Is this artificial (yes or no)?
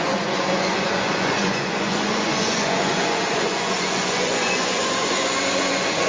yes